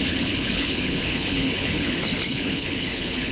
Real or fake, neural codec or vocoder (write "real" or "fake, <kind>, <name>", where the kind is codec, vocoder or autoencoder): fake, codec, HILCodec